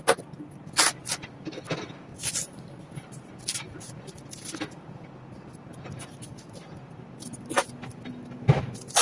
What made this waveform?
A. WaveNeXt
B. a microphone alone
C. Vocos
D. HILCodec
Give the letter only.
B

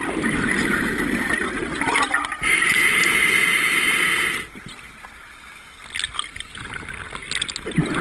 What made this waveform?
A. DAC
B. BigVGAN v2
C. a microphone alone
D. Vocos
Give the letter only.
C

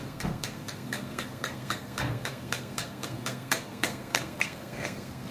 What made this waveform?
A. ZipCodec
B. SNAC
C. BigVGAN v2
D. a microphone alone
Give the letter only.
B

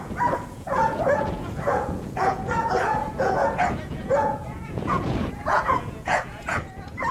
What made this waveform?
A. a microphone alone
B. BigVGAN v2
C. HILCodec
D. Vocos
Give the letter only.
D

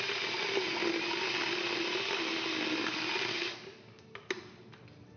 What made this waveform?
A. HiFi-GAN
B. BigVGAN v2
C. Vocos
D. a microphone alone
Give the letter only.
D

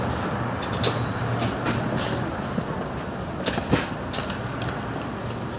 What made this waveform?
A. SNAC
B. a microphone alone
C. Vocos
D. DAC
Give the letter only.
B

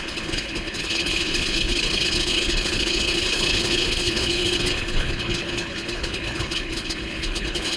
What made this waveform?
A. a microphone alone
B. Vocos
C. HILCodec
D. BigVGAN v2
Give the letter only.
C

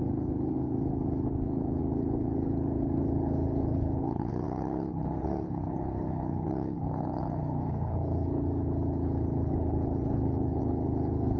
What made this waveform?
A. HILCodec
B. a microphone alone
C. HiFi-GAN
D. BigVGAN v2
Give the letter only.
A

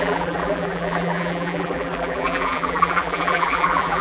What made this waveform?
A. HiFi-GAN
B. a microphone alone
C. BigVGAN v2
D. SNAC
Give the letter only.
C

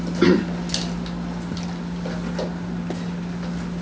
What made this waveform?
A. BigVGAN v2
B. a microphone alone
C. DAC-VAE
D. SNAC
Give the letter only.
B